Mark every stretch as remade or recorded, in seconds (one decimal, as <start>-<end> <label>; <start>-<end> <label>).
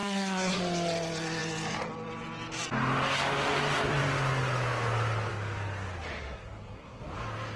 0.0-0.6 remade; 0.6-6.2 recorded; 6.2-7.0 remade; 7.0-7.6 recorded